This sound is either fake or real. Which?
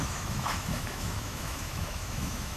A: fake